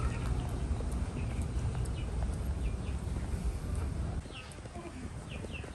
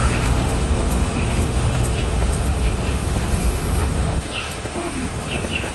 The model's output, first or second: second